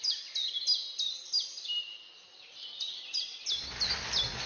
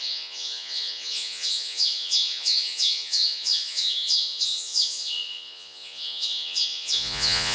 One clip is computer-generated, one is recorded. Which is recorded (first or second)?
first